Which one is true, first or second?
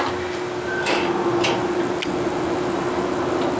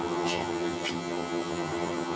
first